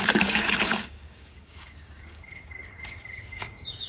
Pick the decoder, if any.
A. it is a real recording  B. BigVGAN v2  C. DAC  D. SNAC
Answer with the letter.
C